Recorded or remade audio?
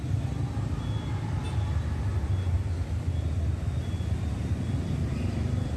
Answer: recorded